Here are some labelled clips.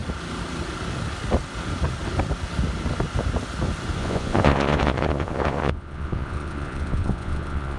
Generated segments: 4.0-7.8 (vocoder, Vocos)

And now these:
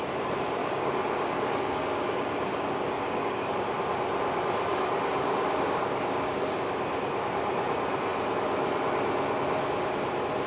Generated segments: 0.6-3.5 (codec, DAC); 4.7-6.6

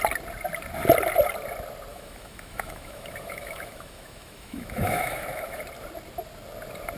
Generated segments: 1.9-5.6 (autoencoder, DAC-VAE)